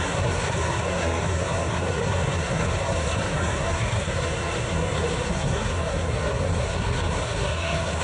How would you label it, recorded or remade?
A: remade